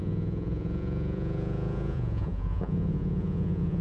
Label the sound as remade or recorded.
remade